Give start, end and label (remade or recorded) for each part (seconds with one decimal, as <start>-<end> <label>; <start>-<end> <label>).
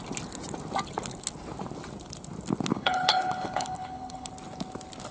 0.0-2.7 recorded; 2.7-4.3 remade; 4.3-5.1 recorded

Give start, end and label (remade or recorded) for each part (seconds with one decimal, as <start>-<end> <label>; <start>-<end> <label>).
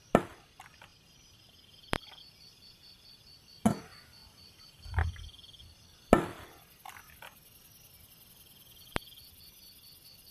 0.0-10.3 recorded